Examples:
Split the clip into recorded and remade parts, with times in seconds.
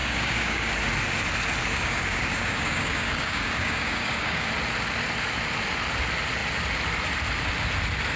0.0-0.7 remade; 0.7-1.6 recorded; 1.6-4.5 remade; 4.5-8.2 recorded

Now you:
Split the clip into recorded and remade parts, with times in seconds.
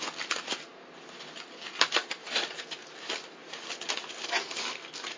0.0-5.2 recorded